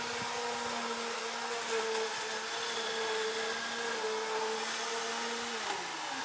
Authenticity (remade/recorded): recorded